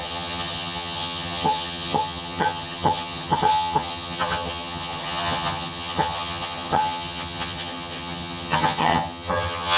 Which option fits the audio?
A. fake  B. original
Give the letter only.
A